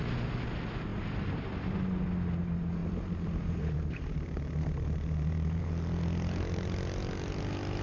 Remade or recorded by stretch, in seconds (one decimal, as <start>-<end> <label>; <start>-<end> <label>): 0.0-0.9 recorded; 0.9-1.8 remade; 1.8-2.8 recorded; 2.8-5.7 remade; 5.7-7.8 recorded